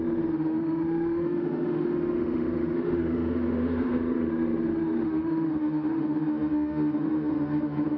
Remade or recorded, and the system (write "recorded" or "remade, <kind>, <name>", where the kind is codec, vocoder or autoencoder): remade, autoencoder, DAC-VAE